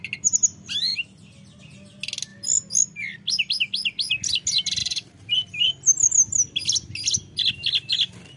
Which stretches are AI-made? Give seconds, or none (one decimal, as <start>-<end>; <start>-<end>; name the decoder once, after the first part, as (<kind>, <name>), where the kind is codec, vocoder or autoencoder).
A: 4.8-5.3 (vocoder, BigVGAN v2)